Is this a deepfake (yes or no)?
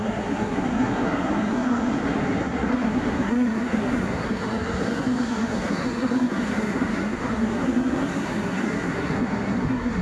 yes